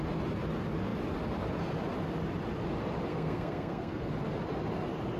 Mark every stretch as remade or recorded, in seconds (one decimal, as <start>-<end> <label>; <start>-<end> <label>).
0.0-3.1 recorded; 3.1-4.1 remade; 4.1-5.2 recorded